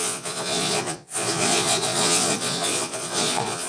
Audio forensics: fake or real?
fake